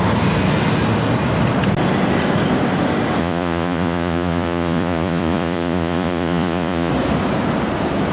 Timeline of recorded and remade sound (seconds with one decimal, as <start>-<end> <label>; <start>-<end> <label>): 0.0-3.2 recorded; 3.2-6.9 remade; 6.9-8.1 recorded